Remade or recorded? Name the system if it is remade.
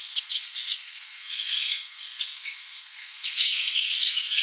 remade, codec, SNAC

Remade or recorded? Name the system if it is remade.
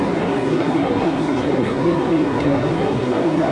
remade, codec, SNAC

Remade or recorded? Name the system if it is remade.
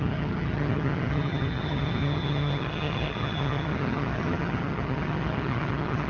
remade, vocoder, HiFi-GAN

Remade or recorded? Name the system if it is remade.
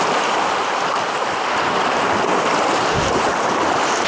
recorded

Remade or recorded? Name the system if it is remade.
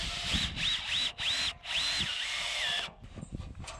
remade, vocoder, BigVGAN v2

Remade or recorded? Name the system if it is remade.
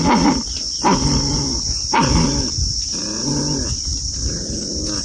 recorded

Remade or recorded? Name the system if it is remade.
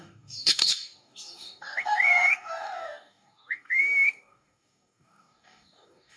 remade, codec, DAC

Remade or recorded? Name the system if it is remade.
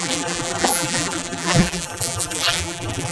remade, vocoder, BigVGAN v2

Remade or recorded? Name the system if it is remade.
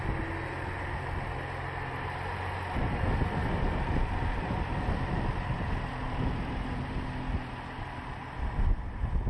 recorded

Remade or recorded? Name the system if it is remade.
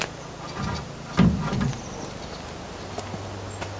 recorded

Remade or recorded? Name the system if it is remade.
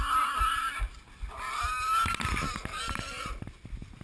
recorded